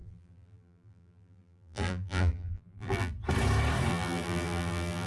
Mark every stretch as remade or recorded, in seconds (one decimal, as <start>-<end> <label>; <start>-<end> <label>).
0.0-3.1 remade; 3.1-3.9 recorded; 3.9-5.1 remade